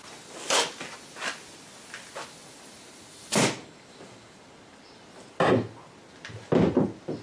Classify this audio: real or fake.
real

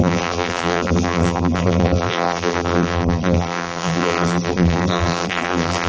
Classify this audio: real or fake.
fake